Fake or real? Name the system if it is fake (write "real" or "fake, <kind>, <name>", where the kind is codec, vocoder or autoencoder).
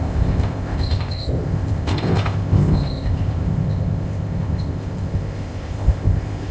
fake, codec, ZipCodec